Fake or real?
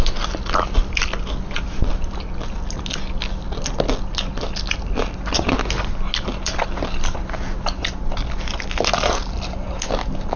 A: real